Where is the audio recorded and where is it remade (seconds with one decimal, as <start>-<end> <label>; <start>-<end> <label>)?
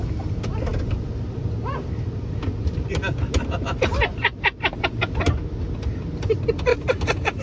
0.0-6.7 recorded; 6.7-7.4 remade